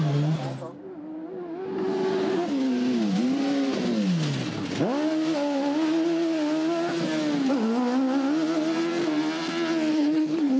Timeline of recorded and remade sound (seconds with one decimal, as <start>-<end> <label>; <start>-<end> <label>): 0.0-9.9 recorded; 9.9-10.6 remade